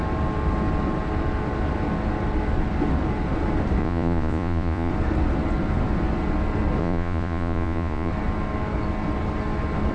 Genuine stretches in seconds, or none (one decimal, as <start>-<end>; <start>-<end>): 0.0-3.8; 4.9-6.8; 8.1-9.9